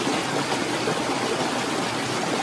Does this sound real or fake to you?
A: real